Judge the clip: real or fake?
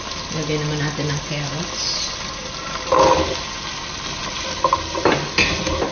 real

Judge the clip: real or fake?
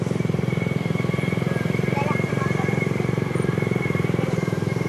fake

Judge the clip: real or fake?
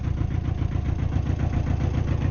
real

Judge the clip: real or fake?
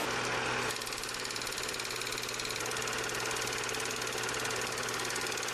real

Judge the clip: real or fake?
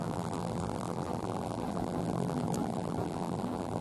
fake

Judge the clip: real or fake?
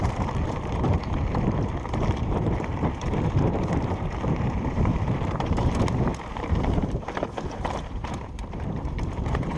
fake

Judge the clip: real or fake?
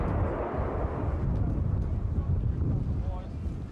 real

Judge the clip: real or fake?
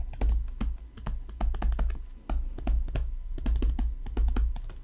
real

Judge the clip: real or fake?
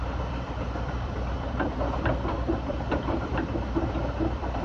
fake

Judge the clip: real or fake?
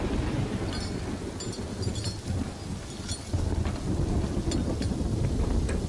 real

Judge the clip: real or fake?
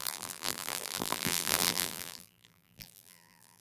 fake